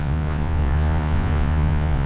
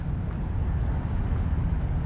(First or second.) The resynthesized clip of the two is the first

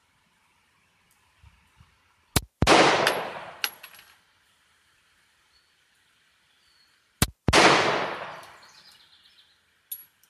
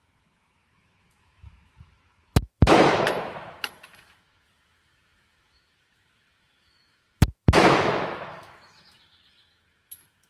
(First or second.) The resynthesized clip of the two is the second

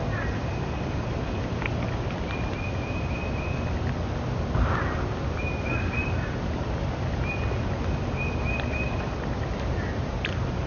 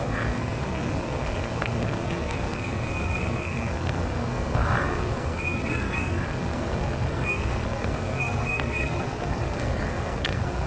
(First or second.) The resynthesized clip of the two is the second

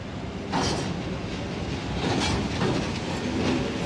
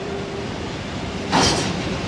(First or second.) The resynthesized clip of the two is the second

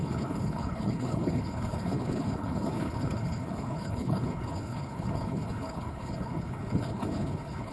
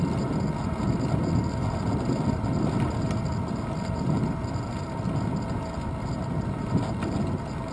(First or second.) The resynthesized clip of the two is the first